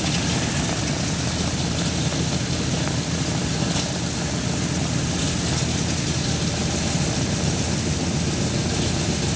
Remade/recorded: recorded